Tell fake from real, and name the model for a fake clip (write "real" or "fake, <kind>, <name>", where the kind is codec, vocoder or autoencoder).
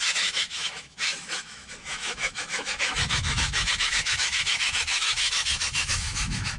fake, autoencoder, DAC-VAE